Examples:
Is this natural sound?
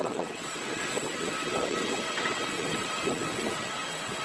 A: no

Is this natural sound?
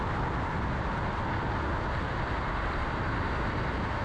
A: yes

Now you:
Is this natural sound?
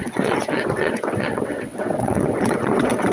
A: no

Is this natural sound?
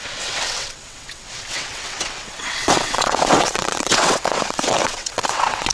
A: no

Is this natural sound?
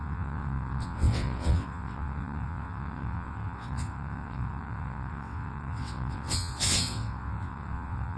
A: no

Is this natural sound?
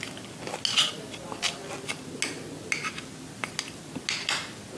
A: yes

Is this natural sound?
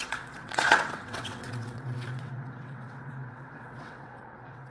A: no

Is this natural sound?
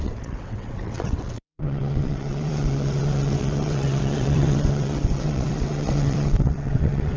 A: no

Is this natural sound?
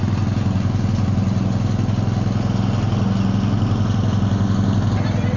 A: yes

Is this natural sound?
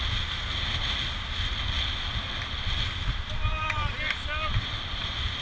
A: yes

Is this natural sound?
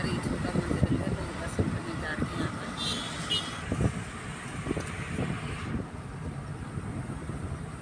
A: yes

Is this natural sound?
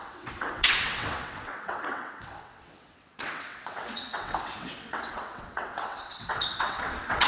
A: no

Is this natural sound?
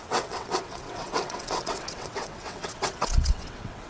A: no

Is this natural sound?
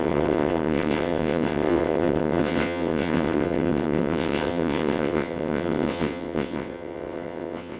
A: no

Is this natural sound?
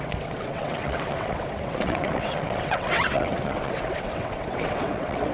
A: no